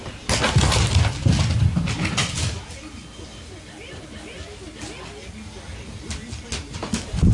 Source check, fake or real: real